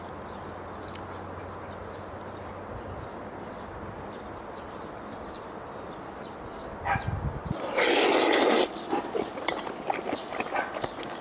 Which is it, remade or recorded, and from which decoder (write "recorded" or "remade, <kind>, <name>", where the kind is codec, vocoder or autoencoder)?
recorded